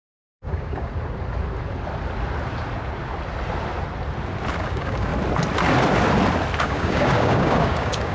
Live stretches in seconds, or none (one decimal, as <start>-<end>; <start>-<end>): 0.9-4.6; 5.1-6.6